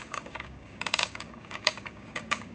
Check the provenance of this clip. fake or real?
fake